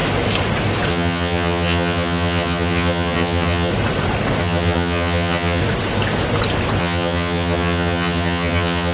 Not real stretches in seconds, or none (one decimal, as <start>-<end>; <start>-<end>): 0.9-3.7; 4.4-5.6; 6.8-8.9